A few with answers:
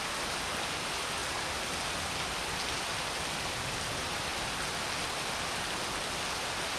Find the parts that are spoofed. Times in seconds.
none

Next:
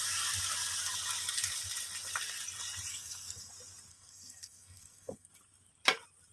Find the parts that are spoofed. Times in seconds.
2.9-3.5; 3.9-5.3

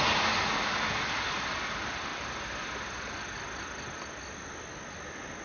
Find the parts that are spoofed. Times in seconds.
none

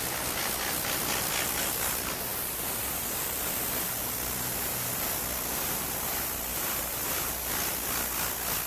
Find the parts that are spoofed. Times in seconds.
6.5-7.2